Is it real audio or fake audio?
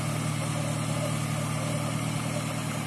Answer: real